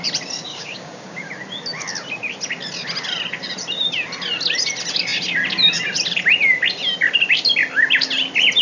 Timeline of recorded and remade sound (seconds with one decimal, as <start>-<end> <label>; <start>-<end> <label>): 0.0-0.5 recorded; 0.5-1.3 remade; 1.3-8.6 recorded